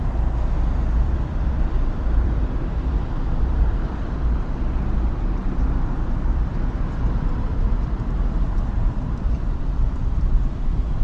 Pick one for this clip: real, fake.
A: fake